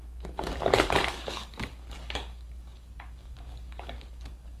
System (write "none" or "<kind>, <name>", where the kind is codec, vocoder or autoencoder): codec, DAC